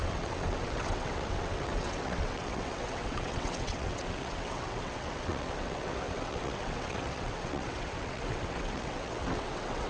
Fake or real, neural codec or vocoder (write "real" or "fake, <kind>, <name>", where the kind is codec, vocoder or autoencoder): fake, vocoder, WaveNeXt